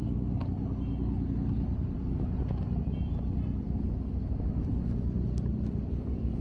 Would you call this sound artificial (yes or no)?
no